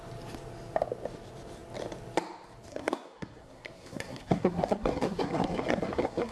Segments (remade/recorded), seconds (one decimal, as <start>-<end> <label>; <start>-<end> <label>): 0.0-2.7 recorded; 2.7-6.3 remade